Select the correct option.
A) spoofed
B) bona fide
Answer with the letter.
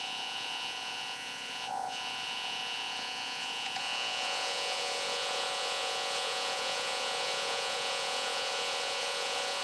A